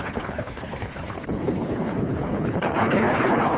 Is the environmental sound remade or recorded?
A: remade